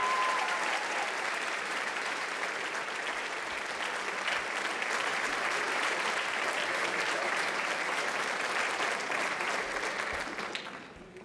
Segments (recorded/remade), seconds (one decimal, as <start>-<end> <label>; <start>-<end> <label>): 0.0-2.5 remade; 2.5-5.1 recorded; 5.1-9.6 remade; 9.6-11.2 recorded